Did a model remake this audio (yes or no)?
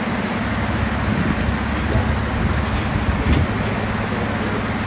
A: no